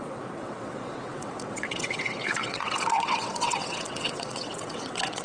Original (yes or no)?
no